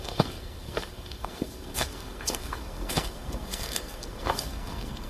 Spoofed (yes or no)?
yes